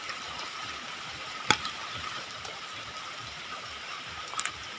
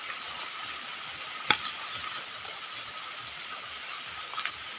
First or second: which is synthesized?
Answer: first